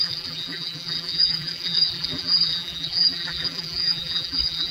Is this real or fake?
fake